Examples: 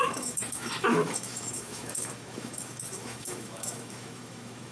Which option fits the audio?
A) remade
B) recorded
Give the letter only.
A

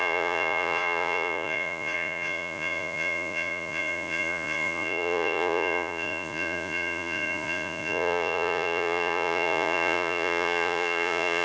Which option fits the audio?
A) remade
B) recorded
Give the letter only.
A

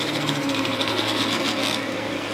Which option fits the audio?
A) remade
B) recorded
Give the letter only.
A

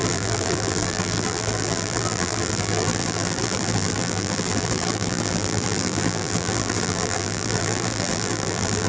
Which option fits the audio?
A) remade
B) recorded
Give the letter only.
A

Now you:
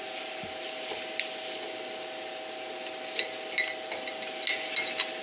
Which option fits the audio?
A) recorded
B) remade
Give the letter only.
A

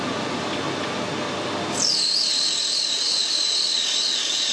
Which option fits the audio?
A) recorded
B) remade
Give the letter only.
A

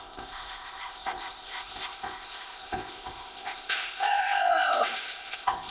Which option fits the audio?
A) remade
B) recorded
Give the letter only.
A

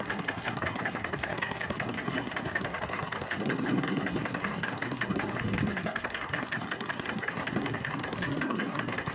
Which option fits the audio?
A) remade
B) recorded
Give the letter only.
A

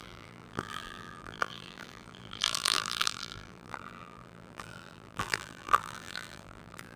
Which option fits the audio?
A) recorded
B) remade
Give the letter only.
B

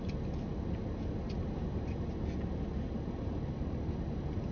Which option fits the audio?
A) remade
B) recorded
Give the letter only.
B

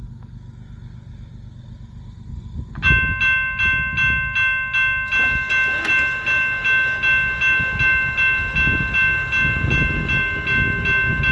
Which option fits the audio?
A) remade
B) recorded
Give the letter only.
B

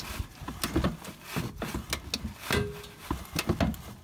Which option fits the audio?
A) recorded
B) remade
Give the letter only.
A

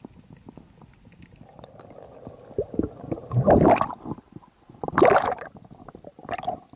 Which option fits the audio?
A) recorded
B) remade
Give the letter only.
A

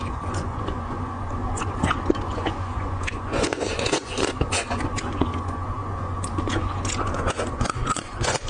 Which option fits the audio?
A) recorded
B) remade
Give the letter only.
B